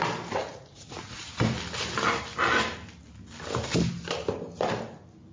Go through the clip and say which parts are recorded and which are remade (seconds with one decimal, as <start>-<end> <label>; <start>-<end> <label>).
0.0-0.5 recorded; 0.5-1.2 remade; 1.2-5.3 recorded